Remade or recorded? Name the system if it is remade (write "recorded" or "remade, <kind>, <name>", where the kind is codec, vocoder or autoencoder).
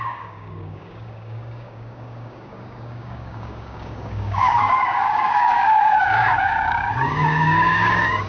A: remade, codec, DAC